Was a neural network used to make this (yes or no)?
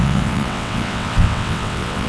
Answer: yes